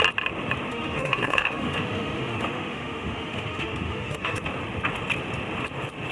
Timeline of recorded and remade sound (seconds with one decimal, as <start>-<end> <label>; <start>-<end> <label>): 0.0-0.7 recorded; 0.7-4.4 remade; 4.4-6.1 recorded